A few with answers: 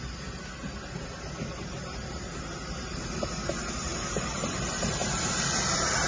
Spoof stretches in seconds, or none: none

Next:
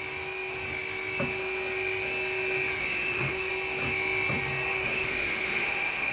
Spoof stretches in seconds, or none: 2.8-3.5 (autoencoder, DAC-VAE); 4.7-6.1

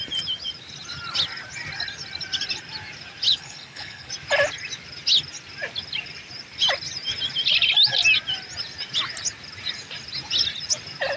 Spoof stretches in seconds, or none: 3.3-4.1 (codec, HILCodec)

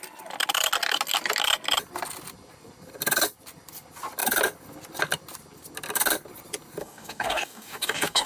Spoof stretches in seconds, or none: 6.8-8.3 (codec, DAC)

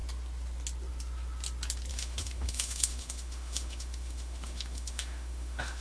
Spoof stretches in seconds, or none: 1.9-5.8 (autoencoder, DAC-VAE)

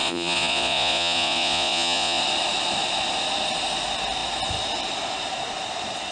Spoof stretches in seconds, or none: 0.0-2.2 (vocoder, Vocos)